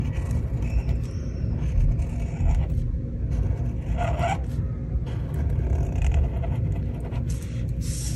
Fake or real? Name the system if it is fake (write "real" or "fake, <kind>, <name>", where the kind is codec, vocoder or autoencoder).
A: real